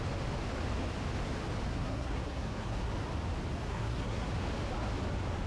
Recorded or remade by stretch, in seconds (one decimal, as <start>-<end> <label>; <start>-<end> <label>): 0.0-1.7 recorded; 1.7-2.9 remade; 2.9-3.7 recorded; 3.7-4.3 remade; 4.3-5.5 recorded